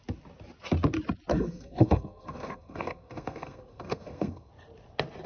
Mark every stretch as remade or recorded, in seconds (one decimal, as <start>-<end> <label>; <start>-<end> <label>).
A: 0.0-1.3 recorded; 1.3-4.5 remade; 4.5-5.3 recorded